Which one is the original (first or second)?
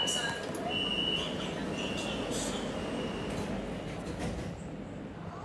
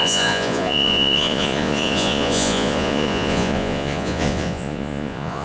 first